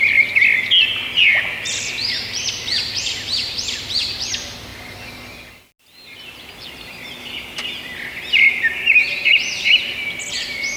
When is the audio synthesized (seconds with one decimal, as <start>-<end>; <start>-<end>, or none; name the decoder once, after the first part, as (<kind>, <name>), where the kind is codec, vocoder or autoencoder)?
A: 2.0-4.3 (vocoder, BigVGAN v2); 9.0-9.9

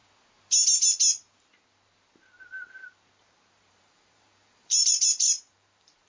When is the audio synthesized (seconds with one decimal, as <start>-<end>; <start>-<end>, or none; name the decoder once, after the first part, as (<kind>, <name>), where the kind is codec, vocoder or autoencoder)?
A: 3.7-6.1 (vocoder, BigVGAN v2)

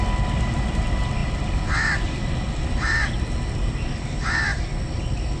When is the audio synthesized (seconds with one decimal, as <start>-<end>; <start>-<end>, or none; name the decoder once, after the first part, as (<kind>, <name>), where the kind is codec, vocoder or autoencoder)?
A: 1.2-3.1 (vocoder, BigVGAN v2)

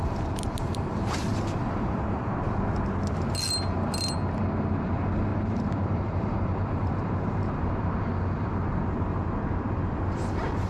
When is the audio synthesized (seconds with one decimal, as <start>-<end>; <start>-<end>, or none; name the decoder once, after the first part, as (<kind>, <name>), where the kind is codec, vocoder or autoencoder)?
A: 1.3-2.4 (vocoder, BigVGAN v2); 5.3-8.1